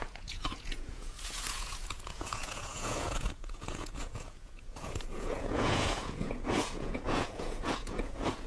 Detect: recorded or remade remade